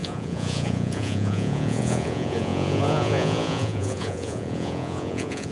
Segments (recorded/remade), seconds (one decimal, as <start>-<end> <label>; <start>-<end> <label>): 0.0-5.5 remade